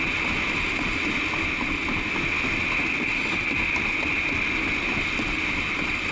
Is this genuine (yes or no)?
yes